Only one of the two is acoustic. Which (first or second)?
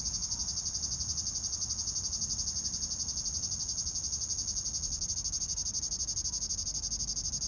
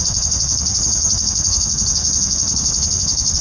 first